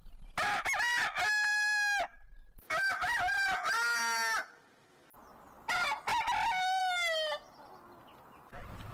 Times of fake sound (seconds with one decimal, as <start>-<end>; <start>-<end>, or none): none